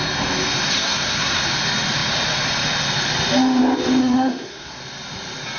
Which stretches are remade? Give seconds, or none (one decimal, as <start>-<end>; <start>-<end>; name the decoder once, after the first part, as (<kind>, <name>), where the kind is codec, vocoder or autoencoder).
0.7-1.4 (codec, SNAC); 4.0-4.8